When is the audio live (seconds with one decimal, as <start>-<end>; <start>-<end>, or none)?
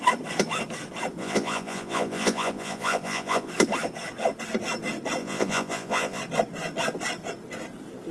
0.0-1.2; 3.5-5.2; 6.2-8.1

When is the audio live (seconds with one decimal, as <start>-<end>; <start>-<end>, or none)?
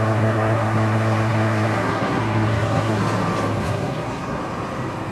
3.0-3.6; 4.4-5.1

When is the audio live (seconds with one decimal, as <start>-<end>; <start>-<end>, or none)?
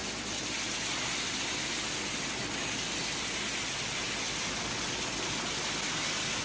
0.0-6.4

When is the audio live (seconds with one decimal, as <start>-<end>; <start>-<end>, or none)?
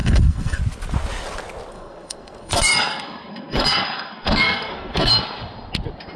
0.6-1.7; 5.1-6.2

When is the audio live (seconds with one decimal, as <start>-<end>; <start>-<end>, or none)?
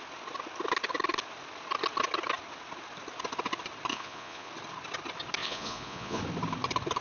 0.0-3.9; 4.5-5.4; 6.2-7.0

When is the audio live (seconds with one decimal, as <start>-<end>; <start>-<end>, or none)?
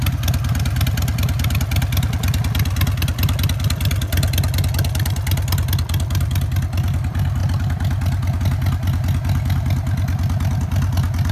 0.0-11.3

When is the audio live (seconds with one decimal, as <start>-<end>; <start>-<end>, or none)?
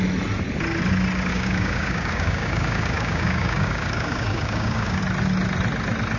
0.0-1.3; 5.0-6.2